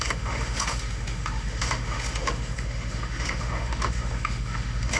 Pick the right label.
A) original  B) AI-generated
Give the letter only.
B